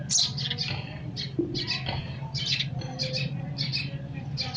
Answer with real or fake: real